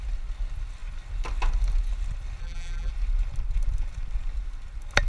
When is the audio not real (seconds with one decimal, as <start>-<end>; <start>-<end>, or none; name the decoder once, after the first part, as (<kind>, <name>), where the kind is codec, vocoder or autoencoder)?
2.4-2.9 (vocoder, BigVGAN v2)